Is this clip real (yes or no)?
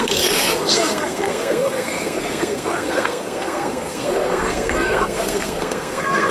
no